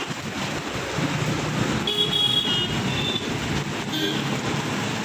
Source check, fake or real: real